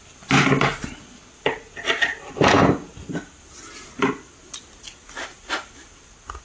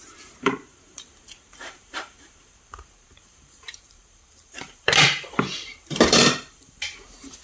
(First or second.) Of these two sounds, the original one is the first